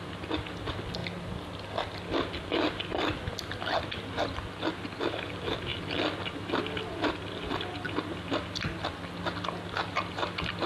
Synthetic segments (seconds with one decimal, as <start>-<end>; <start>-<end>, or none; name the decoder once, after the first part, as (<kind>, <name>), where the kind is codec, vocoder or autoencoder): none